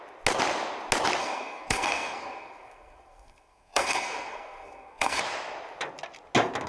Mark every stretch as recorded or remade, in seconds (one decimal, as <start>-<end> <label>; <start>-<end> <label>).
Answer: 0.0-1.2 recorded; 1.2-5.2 remade; 5.2-6.7 recorded